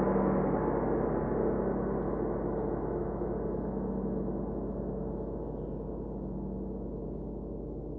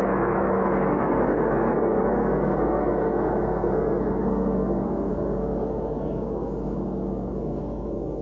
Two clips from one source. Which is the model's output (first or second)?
second